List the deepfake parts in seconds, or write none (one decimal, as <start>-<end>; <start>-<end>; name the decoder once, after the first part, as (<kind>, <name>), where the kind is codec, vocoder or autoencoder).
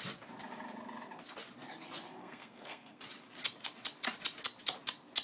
2.2-3.0 (codec, SNAC)